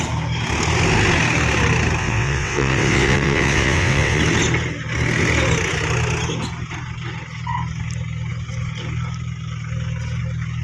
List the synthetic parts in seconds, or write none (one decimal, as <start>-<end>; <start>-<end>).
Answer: 2.0-4.2